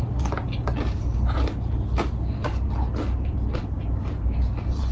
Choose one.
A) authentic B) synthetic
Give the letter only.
A